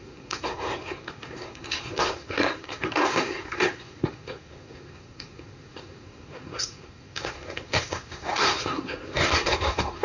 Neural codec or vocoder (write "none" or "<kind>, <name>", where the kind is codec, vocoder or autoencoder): codec, SNAC